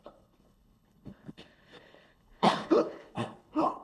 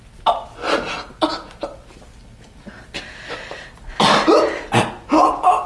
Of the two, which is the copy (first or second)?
first